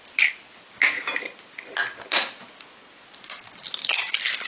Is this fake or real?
real